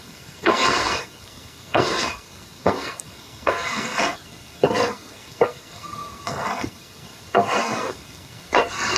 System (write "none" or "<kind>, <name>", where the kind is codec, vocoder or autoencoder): codec, SNAC